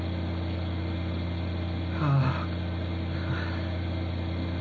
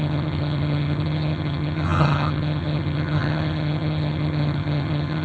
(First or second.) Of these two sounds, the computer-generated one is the second